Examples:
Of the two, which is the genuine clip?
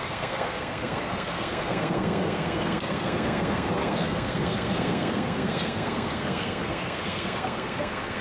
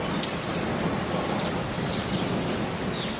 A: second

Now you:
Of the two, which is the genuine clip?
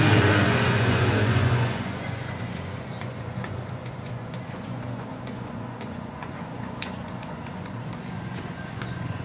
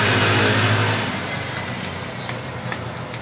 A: second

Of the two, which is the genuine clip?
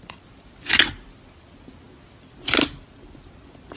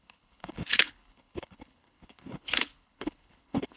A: first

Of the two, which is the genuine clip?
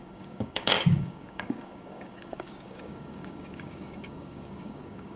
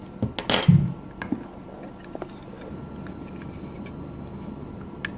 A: second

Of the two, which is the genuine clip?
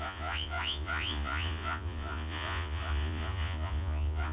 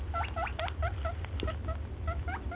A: second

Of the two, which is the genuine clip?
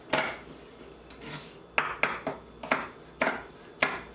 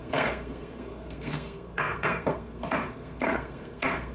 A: first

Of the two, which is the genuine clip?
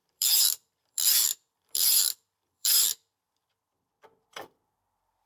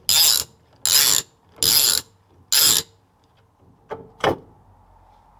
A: second